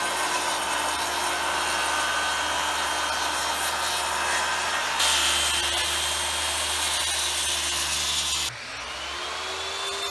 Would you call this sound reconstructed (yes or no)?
no